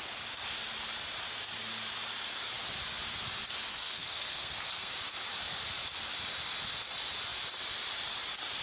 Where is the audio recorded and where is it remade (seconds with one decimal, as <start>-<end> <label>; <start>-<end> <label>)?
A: 0.0-3.7 recorded; 3.7-4.9 remade; 4.9-8.6 recorded

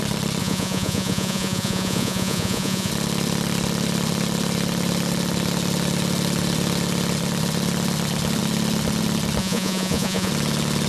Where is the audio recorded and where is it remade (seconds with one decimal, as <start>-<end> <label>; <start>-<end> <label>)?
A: 0.0-0.4 recorded; 0.4-2.9 remade; 2.9-9.4 recorded; 9.4-10.3 remade; 10.3-10.9 recorded

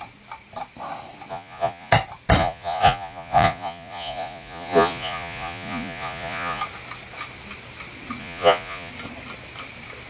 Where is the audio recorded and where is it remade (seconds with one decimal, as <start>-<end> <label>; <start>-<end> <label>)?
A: 0.0-1.3 recorded; 1.3-1.9 remade; 1.9-2.4 recorded; 2.4-6.6 remade; 6.6-8.2 recorded; 8.2-8.9 remade; 8.9-10.1 recorded

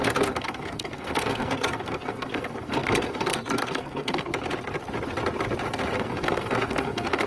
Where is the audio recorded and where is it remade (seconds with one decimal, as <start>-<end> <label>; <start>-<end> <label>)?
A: 0.0-4.3 remade; 4.3-6.0 recorded; 6.0-7.3 remade

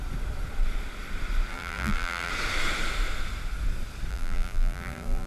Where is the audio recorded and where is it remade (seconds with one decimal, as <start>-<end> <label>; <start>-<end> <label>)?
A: 0.0-1.5 recorded; 1.5-2.3 remade; 2.3-4.1 recorded; 4.1-5.3 remade